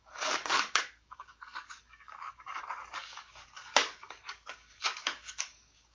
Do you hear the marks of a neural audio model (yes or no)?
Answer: yes